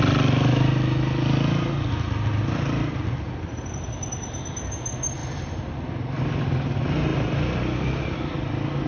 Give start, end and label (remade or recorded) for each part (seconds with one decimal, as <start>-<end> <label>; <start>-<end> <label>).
0.0-8.9 recorded